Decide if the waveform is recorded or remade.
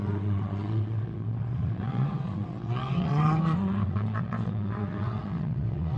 remade